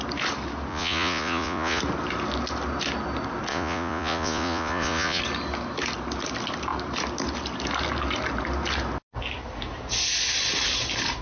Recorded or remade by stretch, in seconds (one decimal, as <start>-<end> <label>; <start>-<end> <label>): 0.0-0.7 recorded; 0.7-1.8 remade; 1.8-3.5 recorded; 3.5-5.2 remade; 5.2-11.2 recorded

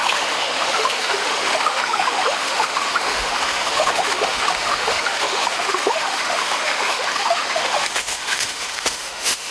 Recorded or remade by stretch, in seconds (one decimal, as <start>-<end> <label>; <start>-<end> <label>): 0.0-9.5 remade